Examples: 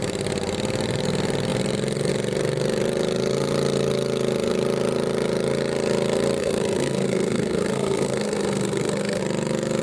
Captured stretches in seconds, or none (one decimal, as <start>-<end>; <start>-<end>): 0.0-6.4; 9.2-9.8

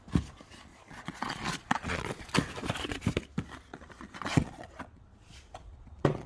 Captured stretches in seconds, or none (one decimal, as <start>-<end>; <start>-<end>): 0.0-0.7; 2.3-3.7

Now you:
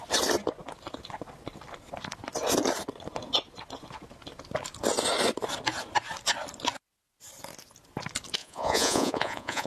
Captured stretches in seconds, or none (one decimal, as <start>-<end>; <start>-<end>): 0.0-8.4

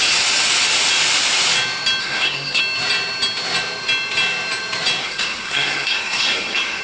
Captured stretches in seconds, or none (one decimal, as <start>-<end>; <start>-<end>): 0.0-2.0; 2.6-5.0

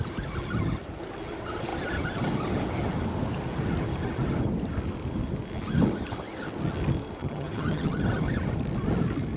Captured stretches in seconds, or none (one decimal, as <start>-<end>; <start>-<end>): 0.0-7.2; 8.0-9.4

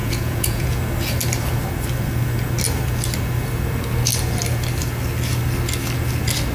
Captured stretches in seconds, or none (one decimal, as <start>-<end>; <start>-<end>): 0.8-6.5

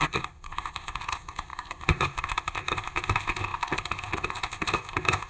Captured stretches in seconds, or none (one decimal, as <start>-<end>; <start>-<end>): none